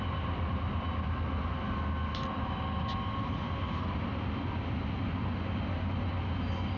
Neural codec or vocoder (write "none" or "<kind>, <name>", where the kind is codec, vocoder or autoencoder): none